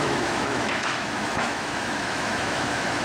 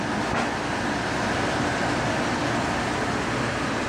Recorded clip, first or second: second